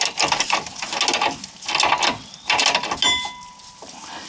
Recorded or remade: recorded